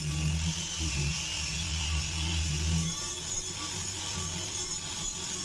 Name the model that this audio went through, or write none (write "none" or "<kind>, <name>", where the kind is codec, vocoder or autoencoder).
none